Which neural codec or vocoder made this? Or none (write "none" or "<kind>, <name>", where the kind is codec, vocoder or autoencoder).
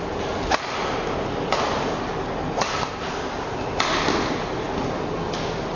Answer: none